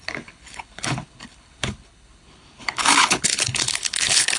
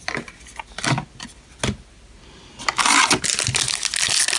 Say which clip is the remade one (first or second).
first